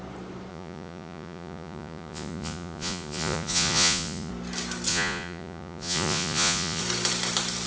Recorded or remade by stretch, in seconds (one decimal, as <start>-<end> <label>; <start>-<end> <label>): 0.0-0.5 recorded; 0.5-4.3 remade; 4.3-4.9 recorded; 4.9-6.8 remade; 6.8-7.7 recorded

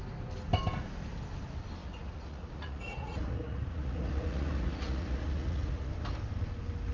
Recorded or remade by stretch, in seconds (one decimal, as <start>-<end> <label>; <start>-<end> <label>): 0.0-1.8 recorded; 1.8-5.9 remade; 5.9-6.9 recorded

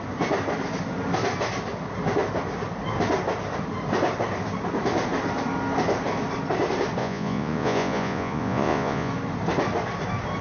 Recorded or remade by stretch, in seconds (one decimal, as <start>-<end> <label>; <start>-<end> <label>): 0.0-7.0 recorded; 7.0-9.1 remade; 9.1-10.4 recorded

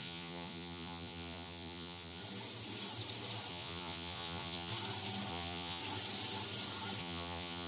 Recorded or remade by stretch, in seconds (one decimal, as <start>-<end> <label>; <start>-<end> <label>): 0.0-2.2 remade; 2.2-3.5 recorded; 3.5-4.7 remade; 4.7-5.3 recorded; 5.3-5.8 remade; 5.8-7.0 recorded; 7.0-7.7 remade

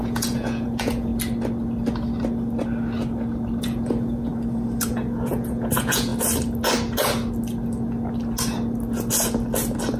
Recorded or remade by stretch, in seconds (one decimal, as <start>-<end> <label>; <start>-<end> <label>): 0.0-1.1 remade; 1.1-3.6 recorded; 3.6-4.3 remade; 4.3-4.9 recorded; 4.9-6.1 remade; 6.1-10.0 recorded